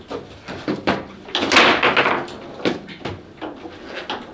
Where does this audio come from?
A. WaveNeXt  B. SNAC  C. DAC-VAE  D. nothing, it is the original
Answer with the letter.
D